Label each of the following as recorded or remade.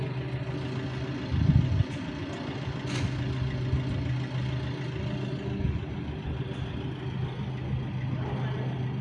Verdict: recorded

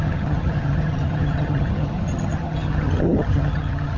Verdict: remade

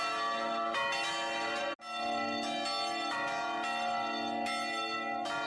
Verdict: recorded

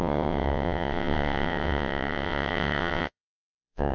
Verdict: remade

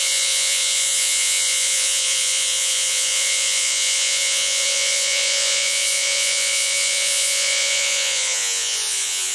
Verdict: remade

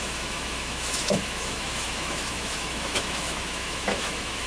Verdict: remade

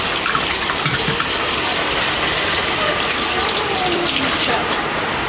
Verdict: remade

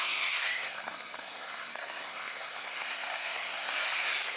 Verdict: remade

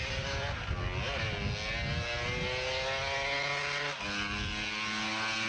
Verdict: recorded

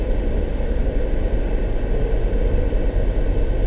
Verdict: recorded